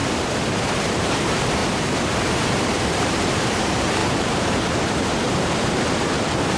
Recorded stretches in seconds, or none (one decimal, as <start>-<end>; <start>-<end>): 1.6-2.3; 4.0-4.9